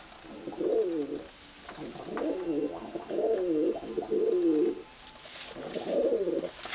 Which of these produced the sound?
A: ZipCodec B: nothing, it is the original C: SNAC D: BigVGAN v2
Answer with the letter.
B